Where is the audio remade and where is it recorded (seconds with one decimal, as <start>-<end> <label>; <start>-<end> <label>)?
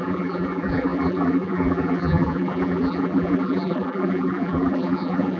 0.0-5.4 remade